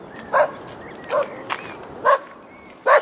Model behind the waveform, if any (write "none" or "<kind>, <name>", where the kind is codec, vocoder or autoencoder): none